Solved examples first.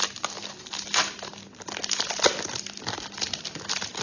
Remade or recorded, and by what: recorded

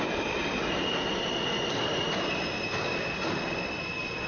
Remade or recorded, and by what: recorded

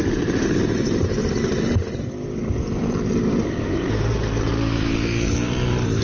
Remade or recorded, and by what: remade, vocoder, BigVGAN v2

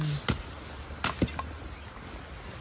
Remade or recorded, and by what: recorded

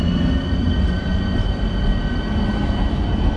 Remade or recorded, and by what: recorded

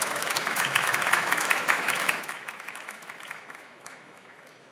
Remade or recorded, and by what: remade, autoencoder, DAC-VAE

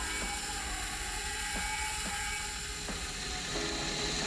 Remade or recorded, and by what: recorded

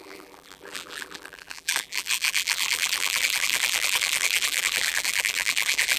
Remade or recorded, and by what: remade, vocoder, BigVGAN v2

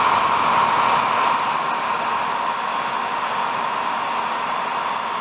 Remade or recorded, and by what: recorded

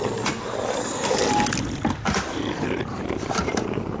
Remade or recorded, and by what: recorded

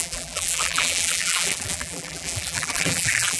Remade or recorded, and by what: remade, vocoder, BigVGAN v2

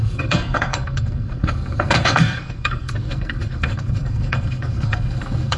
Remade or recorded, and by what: remade, codec, SNAC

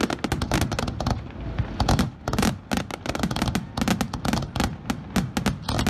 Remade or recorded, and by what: recorded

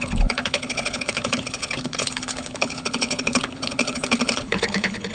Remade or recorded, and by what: remade, codec, HILCodec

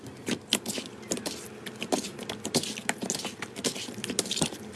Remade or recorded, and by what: recorded